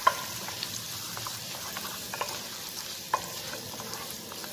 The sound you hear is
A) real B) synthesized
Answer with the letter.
A